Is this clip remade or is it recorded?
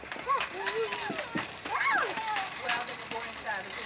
recorded